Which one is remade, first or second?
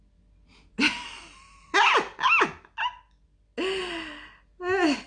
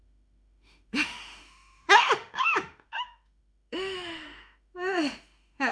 second